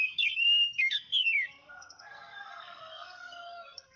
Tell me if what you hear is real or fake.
fake